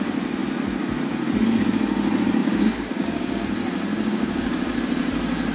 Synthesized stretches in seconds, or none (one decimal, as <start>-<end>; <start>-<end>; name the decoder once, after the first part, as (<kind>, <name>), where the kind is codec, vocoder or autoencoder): 2.4-3.4 (codec, DAC); 3.9-4.8